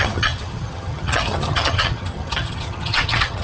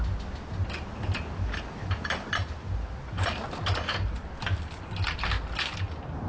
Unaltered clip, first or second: second